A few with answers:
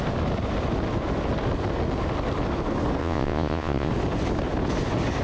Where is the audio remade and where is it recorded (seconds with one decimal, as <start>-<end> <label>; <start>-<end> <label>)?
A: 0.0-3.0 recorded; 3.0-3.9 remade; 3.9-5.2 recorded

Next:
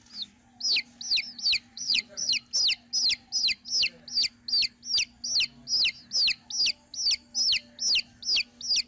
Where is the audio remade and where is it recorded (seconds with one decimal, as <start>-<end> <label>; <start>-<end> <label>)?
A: 0.0-1.7 recorded; 1.7-2.3 remade; 2.3-8.9 recorded

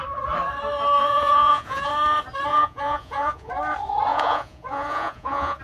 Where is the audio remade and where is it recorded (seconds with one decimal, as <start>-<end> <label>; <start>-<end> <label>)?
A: 0.0-1.0 recorded; 1.0-1.9 remade; 1.9-2.5 recorded; 2.5-3.5 remade; 3.5-4.1 recorded; 4.1-5.6 remade